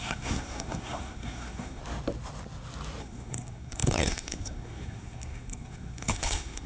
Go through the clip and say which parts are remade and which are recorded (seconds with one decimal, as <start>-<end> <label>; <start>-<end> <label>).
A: 0.0-1.8 remade; 1.8-3.0 recorded; 3.0-6.7 remade